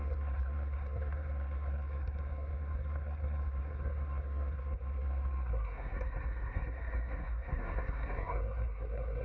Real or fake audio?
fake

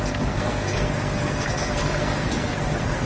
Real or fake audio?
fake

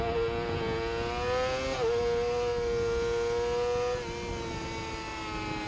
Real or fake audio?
real